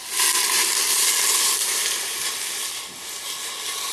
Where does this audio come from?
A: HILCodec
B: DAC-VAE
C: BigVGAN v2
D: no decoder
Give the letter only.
D